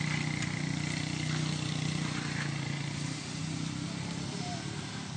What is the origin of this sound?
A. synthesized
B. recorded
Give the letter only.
B